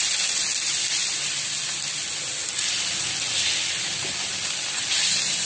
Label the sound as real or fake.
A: real